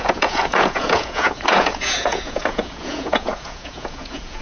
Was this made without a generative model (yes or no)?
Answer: no